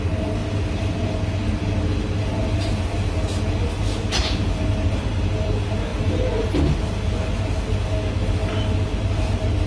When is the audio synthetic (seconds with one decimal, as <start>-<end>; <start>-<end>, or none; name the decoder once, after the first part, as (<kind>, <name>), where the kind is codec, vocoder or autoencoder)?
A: none